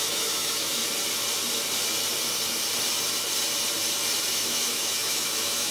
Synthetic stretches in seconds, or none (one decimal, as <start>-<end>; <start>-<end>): 0.0-0.8; 4.2-5.7